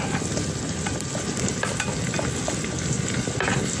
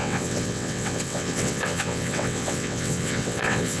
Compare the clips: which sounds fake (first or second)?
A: second